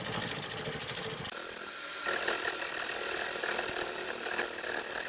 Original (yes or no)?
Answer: yes